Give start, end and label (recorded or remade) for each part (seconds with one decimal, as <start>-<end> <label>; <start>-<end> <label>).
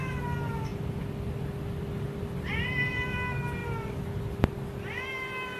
0.0-5.6 recorded